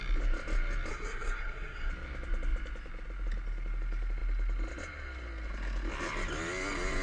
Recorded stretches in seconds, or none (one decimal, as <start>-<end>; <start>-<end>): 0.0-0.9; 1.9-7.0